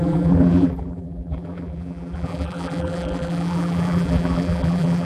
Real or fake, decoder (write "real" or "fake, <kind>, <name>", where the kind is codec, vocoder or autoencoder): fake, vocoder, BigVGAN v2